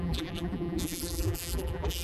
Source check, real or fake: fake